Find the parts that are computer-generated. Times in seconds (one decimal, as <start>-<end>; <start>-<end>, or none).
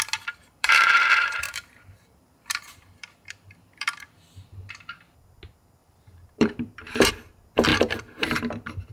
0.4-5.1; 5.8-7.1; 7.7-8.9